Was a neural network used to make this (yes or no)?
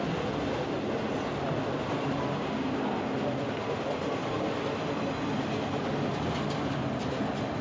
no